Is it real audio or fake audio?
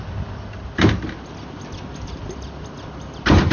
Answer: real